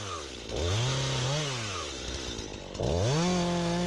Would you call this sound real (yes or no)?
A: yes